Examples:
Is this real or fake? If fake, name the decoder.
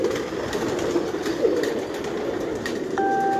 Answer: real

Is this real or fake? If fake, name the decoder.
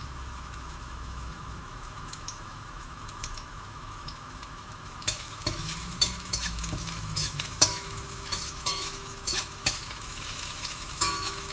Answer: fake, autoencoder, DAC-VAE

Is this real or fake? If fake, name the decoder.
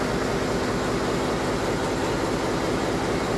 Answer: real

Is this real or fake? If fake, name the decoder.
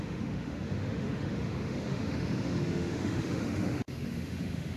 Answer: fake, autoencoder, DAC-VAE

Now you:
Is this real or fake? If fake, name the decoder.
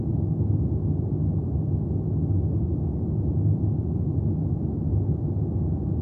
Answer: real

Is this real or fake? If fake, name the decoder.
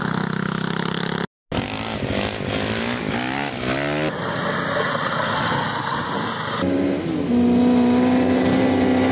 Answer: real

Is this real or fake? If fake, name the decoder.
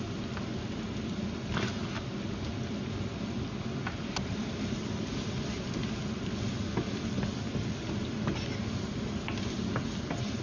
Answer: real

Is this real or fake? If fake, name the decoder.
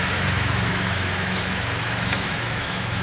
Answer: fake, autoencoder, DAC-VAE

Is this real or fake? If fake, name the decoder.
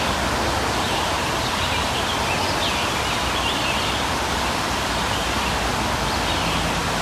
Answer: real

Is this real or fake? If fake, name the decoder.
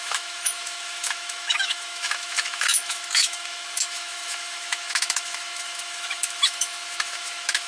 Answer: fake, autoencoder, DAC-VAE